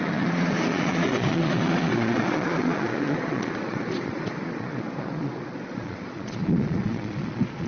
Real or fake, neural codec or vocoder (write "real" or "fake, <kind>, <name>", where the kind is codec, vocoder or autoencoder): fake, vocoder, Vocos